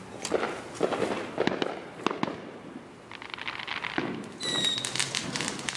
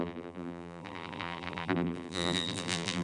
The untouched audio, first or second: first